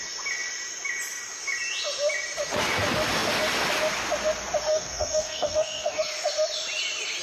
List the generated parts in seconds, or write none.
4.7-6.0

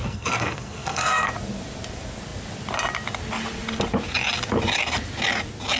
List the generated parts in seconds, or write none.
0.0-1.3

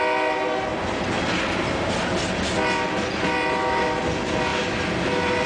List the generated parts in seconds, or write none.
none

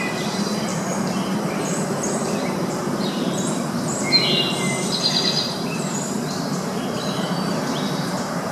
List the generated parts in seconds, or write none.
0.0-8.5

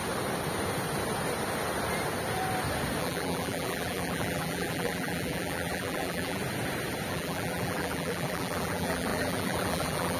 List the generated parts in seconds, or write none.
3.0-6.4; 7.1-10.2

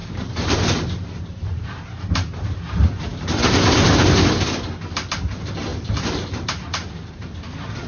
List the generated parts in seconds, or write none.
0.0-4.3; 5.7-7.3

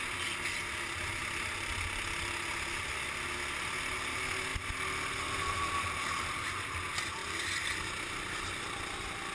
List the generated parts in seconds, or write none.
7.2-7.8